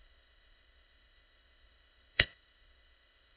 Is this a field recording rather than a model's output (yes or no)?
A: no